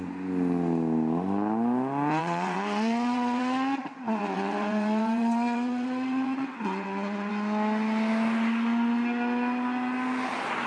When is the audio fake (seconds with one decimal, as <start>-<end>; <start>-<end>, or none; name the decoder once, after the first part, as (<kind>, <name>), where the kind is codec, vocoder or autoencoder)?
2.2-7.3 (vocoder, WaveNeXt)